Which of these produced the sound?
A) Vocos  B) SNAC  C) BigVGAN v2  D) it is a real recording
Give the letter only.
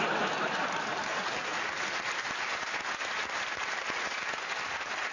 D